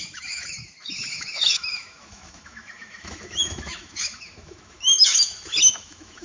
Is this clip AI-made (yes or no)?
yes